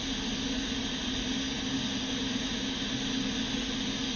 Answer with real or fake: real